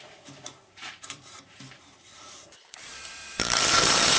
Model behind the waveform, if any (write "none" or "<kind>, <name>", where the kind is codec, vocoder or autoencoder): vocoder, BigVGAN v2